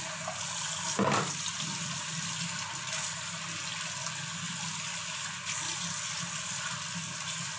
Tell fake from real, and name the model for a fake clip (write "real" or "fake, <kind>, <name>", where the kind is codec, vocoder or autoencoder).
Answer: real